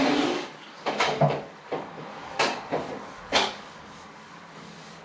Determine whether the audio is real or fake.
fake